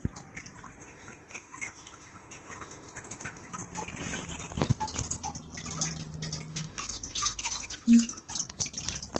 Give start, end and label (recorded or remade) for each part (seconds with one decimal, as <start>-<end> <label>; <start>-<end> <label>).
0.0-0.8 recorded; 0.8-3.5 remade; 3.5-6.5 recorded; 6.5-8.3 remade; 8.3-9.2 recorded